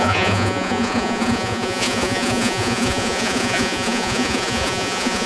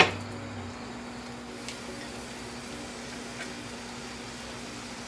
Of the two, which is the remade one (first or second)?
first